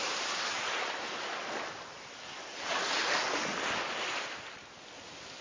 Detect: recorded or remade recorded